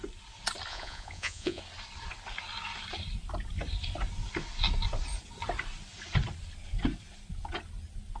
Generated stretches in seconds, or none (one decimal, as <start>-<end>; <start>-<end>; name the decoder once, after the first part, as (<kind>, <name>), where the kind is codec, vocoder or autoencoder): 0.7-1.6 (vocoder, Vocos)